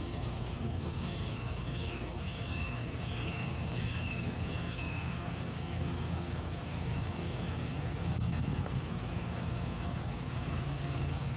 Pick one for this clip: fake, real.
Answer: fake